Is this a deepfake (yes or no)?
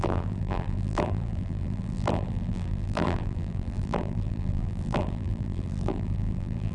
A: yes